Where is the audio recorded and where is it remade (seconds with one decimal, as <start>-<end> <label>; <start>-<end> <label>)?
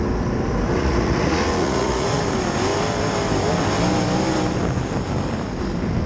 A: 0.0-0.8 recorded; 0.8-2.2 remade; 2.2-6.1 recorded